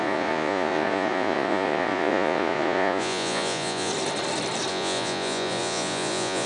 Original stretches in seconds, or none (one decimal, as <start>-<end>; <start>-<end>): 3.9-4.7